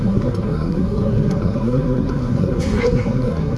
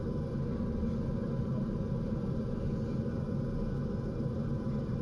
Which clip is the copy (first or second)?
first